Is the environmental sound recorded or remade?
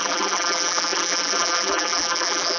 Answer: remade